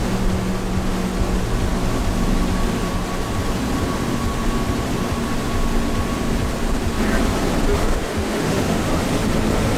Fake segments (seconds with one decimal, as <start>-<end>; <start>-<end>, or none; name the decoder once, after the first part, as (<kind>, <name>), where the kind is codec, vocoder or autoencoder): 7.8-8.9 (autoencoder, DAC-VAE)